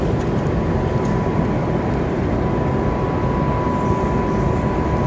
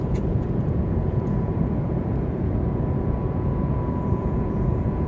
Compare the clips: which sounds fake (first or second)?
second